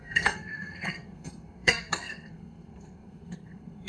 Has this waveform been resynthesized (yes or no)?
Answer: yes